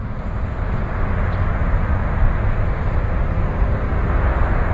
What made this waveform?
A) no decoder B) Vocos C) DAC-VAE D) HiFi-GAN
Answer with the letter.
A